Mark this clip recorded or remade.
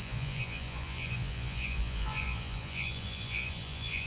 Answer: remade